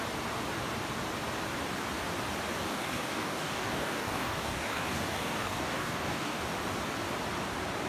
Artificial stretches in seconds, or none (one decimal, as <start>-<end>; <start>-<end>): 2.7-6.4